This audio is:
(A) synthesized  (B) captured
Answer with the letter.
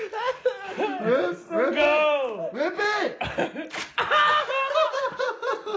B